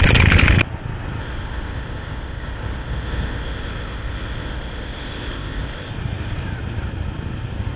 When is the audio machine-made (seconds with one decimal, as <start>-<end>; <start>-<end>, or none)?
1.2-5.9